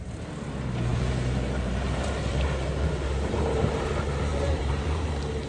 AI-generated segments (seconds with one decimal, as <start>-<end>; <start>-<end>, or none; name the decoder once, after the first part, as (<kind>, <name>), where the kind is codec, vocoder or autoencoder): 0.9-3.9 (vocoder, BigVGAN v2); 4.3-5.1